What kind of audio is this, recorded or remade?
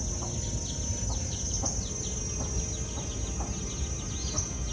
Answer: recorded